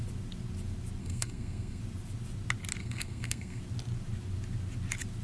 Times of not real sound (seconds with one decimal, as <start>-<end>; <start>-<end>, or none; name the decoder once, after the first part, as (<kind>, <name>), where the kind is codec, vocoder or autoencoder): 1.0-1.8 (codec, SNAC); 2.8-3.6

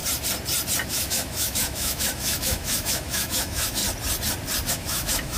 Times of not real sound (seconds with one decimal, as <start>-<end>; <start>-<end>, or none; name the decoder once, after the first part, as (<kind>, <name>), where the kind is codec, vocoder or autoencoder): 0.9-3.8 (autoencoder, DAC-VAE); 4.7-5.4

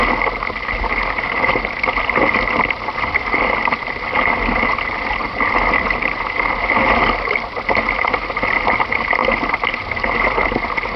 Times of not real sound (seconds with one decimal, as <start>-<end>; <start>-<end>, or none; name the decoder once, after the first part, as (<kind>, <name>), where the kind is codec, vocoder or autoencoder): none

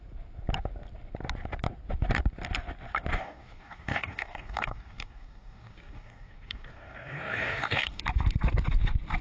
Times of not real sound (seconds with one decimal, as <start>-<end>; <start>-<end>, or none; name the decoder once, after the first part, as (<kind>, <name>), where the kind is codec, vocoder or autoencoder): 3.1-8.0 (codec, DAC)

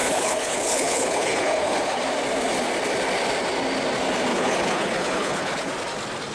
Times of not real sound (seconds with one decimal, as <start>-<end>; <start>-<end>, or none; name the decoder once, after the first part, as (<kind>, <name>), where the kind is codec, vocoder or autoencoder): 0.0-2.0 (codec, HILCodec); 4.3-5.7